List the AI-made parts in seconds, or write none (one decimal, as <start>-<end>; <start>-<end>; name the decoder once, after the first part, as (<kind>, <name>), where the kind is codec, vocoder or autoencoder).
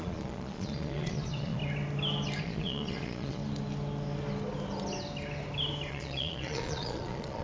0.0-1.6 (vocoder, Vocos); 2.4-3.4; 5.9-7.4